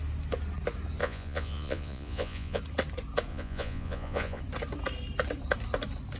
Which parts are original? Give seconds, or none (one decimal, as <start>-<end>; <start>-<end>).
0.0-1.0; 2.6-3.3; 4.4-6.2